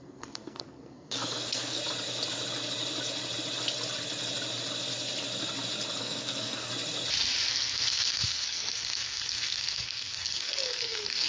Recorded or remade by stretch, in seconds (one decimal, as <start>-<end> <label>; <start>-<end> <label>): 0.0-1.8 remade; 1.8-6.0 recorded; 6.0-6.7 remade; 6.7-7.5 recorded; 7.5-11.3 remade